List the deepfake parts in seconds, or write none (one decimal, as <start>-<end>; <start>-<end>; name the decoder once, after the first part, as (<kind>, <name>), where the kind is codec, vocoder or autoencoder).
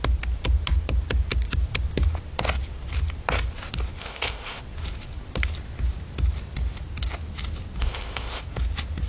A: 4.0-4.6 (codec, ZipCodec); 7.8-8.4